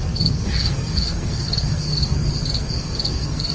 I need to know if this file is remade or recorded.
remade